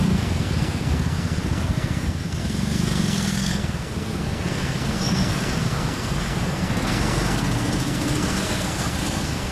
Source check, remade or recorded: remade